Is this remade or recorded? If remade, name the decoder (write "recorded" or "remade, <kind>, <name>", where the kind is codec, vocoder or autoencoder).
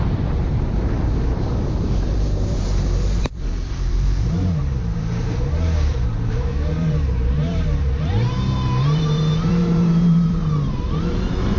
remade, vocoder, BigVGAN v2